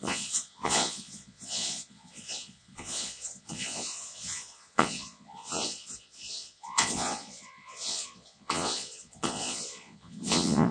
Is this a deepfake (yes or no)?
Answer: yes